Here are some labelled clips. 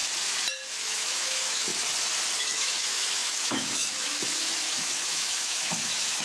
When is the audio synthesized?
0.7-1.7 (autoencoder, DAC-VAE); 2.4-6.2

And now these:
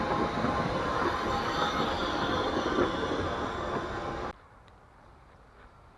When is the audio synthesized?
2.0-2.8 (vocoder, BigVGAN v2)

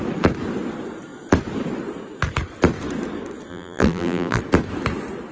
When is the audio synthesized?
3.5-4.4 (vocoder, BigVGAN v2)

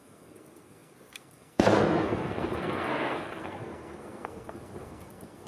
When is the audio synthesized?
0.0-5.5 (codec, SNAC)

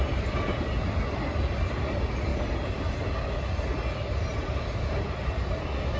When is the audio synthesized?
none

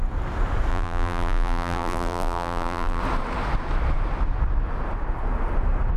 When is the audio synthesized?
0.7-3.0 (vocoder, BigVGAN v2)